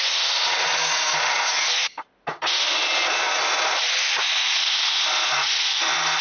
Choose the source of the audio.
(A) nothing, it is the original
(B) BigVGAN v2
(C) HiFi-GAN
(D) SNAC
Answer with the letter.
A